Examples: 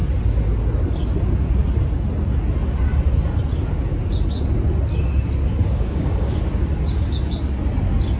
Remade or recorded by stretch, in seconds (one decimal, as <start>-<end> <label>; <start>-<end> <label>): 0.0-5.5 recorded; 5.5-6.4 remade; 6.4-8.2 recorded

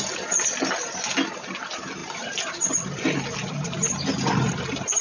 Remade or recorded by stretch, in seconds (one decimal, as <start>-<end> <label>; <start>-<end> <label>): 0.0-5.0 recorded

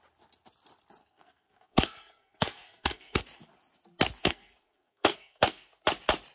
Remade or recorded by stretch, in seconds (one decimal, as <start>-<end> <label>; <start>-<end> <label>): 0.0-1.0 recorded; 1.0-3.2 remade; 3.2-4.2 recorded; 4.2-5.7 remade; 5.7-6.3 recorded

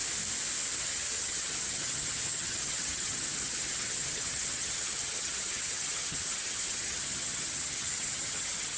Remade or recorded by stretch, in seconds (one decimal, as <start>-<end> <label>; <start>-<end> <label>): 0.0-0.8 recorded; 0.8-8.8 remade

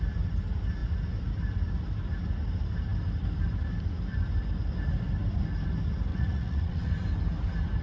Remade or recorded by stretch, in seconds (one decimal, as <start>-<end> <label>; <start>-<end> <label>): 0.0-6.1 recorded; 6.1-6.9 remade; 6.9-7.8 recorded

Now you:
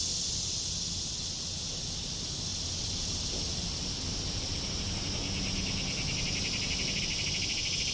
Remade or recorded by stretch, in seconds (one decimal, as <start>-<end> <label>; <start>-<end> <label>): 0.0-7.9 recorded

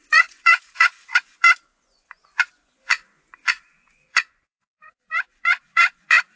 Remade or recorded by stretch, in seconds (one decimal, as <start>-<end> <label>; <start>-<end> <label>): 0.0-6.4 remade